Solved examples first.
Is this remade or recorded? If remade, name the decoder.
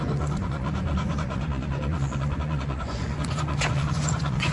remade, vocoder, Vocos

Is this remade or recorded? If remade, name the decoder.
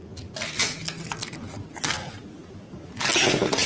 recorded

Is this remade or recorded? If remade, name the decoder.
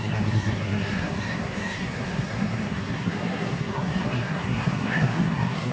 remade, codec, SNAC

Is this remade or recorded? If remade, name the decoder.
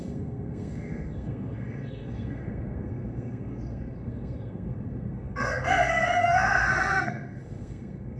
remade, codec, SNAC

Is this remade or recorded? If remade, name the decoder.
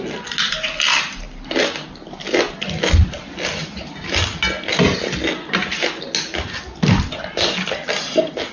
recorded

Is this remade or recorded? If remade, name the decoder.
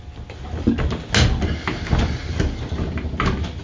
recorded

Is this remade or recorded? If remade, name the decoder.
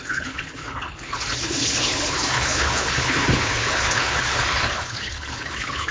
remade, codec, HILCodec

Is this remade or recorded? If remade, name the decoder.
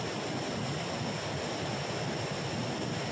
recorded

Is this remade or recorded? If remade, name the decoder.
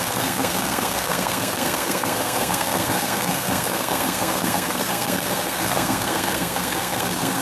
remade, codec, SNAC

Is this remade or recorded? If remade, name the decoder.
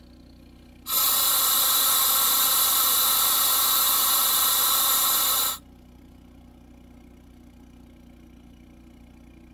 recorded